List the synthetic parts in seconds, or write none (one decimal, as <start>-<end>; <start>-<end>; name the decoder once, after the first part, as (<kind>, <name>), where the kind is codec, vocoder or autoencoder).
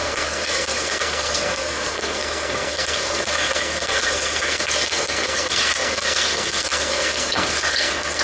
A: 0.0-8.2 (codec, SNAC)